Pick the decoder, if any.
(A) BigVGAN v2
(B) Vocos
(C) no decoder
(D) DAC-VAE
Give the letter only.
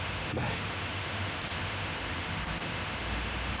D